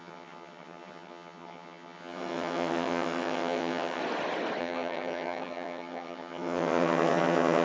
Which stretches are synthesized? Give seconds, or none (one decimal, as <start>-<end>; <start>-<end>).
0.0-4.0; 4.6-7.6